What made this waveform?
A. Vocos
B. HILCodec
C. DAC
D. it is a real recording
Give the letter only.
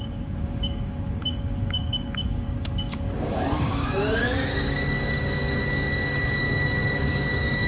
C